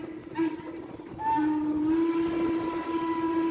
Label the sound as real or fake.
real